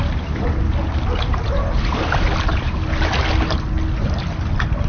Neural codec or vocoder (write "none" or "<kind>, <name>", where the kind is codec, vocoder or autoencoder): none